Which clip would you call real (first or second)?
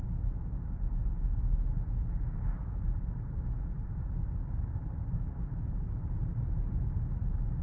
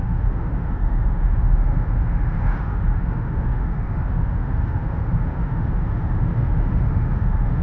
first